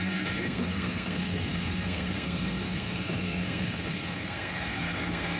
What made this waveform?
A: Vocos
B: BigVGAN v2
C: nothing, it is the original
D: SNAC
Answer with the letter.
D